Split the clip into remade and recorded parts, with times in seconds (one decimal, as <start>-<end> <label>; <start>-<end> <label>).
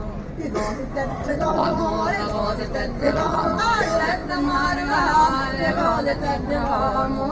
0.0-1.1 recorded; 1.1-1.8 remade; 1.8-3.0 recorded; 3.0-3.6 remade; 3.6-7.3 recorded